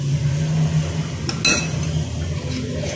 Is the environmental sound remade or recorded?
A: recorded